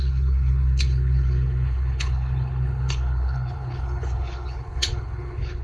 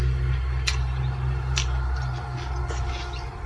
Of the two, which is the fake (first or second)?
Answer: first